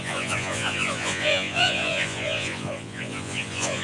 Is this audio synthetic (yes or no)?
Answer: yes